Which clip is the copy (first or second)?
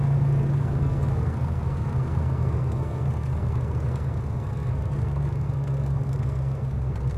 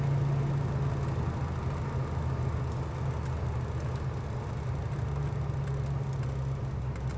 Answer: first